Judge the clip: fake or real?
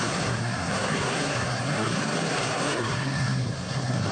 fake